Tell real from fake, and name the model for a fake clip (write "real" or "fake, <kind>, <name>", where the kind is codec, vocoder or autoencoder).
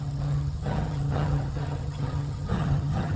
fake, vocoder, HiFi-GAN